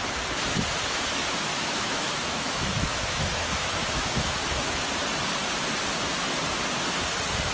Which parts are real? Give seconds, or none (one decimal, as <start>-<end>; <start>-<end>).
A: 0.0-1.5; 4.9-7.5